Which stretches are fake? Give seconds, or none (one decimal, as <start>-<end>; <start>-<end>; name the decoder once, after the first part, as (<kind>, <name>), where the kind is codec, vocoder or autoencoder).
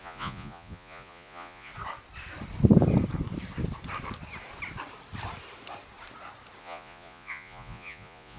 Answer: 0.0-1.7 (vocoder, Vocos); 6.6-8.4